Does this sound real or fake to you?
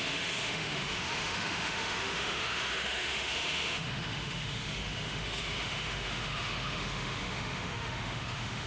fake